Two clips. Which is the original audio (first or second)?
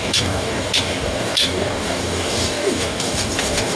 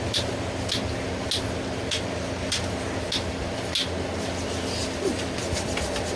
second